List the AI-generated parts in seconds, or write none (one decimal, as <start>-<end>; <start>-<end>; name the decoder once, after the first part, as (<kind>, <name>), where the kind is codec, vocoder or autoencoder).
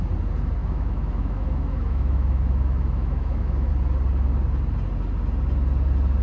0.6-3.7 (autoencoder, DAC-VAE)